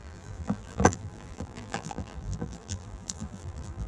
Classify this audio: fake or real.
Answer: fake